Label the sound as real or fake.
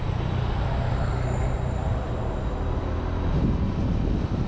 real